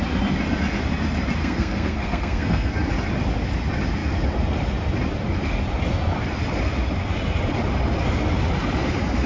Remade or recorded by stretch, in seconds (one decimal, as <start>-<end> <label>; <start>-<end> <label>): 0.0-1.4 recorded; 1.4-2.7 remade; 2.7-9.3 recorded